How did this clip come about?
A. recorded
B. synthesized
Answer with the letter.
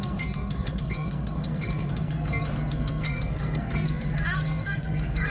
B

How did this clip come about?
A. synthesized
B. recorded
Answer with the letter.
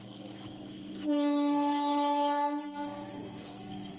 A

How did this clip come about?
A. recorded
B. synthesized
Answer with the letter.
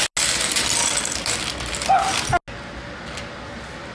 A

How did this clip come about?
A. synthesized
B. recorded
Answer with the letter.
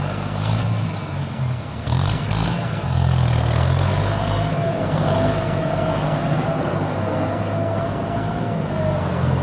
A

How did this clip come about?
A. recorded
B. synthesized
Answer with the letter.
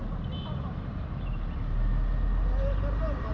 A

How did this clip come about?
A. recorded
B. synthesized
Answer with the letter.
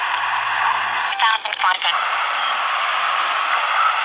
A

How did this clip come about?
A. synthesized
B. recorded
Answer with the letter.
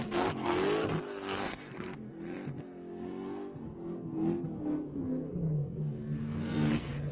A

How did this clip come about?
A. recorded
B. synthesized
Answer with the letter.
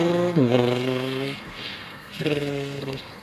B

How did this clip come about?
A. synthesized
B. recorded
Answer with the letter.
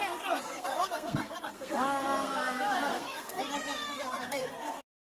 A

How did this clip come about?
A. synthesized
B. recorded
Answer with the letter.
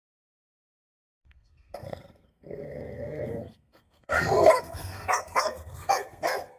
A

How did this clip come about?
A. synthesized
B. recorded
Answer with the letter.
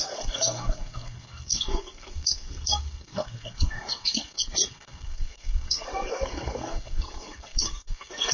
A